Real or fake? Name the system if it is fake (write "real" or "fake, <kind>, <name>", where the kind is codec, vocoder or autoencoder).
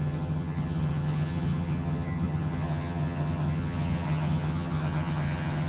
fake, vocoder, HiFi-GAN